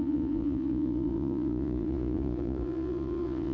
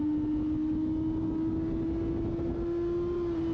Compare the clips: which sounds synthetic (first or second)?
first